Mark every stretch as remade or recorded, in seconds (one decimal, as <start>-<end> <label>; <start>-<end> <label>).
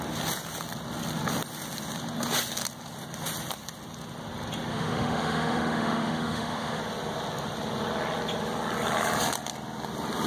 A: 0.0-4.7 recorded; 4.7-6.8 remade; 6.8-10.3 recorded